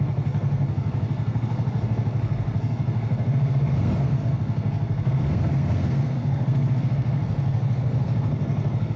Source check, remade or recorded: remade